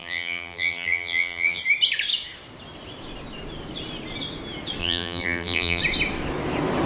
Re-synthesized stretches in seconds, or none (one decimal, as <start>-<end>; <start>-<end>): 0.0-1.6; 4.8-5.8